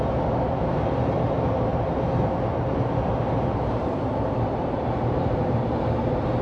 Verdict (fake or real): fake